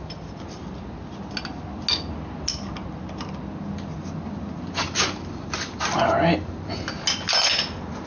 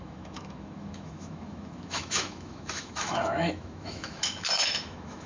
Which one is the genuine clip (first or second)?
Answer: first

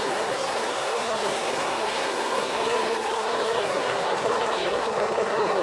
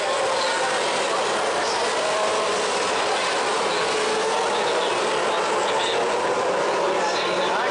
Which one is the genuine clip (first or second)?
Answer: second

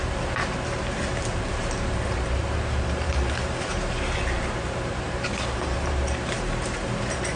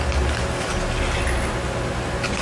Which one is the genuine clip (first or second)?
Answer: second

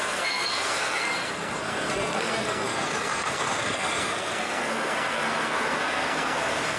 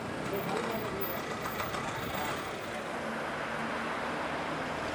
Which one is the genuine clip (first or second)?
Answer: second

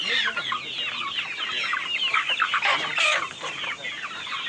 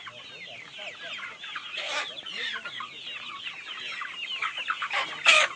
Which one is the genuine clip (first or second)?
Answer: first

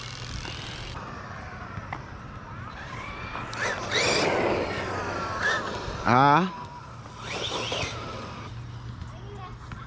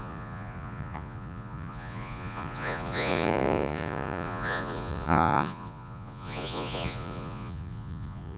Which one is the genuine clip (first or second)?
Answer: first